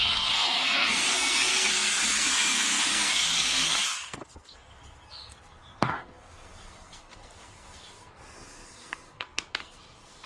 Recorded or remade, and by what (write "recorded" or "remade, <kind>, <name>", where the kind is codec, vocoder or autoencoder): remade, codec, SNAC